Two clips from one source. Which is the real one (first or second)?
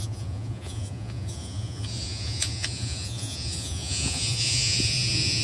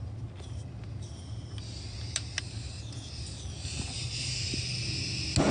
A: second